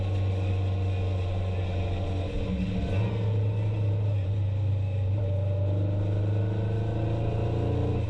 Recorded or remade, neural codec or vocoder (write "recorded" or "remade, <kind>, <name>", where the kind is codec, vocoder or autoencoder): recorded